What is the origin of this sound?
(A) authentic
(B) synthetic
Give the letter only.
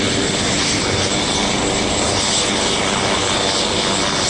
A